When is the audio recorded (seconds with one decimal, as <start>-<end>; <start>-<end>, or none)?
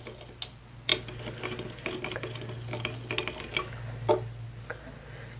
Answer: 0.0-5.4